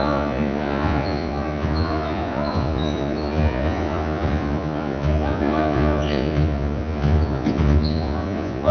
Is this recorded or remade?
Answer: remade